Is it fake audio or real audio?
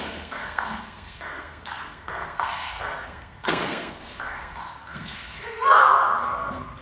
fake